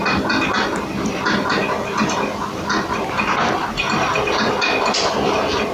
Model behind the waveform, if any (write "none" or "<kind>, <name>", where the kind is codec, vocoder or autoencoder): none